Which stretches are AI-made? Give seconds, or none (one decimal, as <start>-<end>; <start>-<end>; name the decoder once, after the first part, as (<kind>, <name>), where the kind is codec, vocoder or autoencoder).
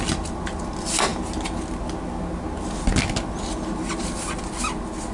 none